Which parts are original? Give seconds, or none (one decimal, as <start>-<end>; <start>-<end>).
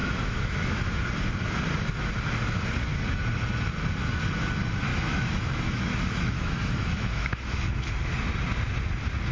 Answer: 0.8-4.9; 7.9-9.3